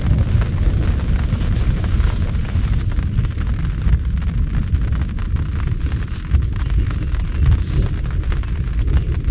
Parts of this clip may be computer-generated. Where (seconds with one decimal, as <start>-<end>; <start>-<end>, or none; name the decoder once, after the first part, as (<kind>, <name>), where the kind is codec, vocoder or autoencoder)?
none